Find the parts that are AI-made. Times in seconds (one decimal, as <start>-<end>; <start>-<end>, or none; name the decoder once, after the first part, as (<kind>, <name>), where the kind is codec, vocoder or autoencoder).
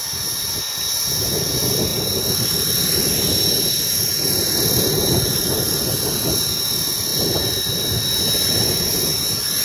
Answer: none